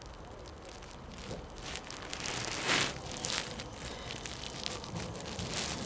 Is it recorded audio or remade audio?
recorded